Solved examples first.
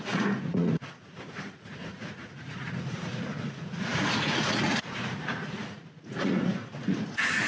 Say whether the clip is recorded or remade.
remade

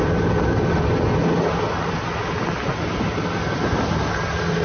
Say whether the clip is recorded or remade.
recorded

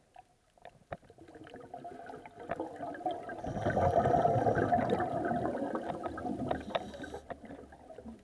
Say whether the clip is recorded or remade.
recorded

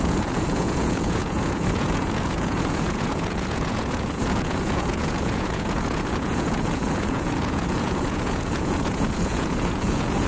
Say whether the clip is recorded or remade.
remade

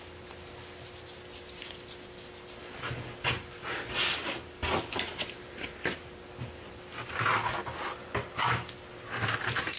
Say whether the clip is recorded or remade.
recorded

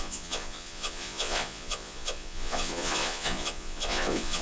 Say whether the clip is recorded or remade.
remade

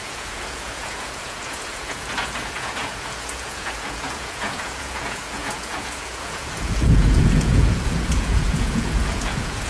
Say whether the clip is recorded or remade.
remade